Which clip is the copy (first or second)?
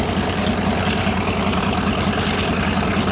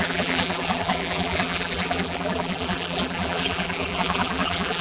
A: second